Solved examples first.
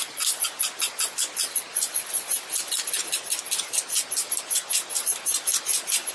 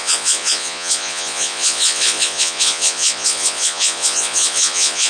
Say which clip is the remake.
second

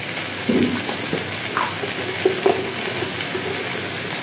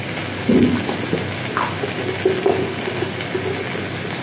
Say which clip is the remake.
first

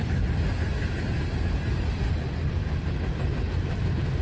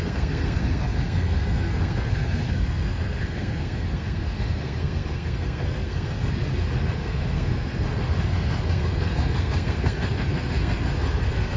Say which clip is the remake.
second